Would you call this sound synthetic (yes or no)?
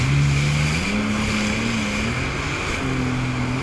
no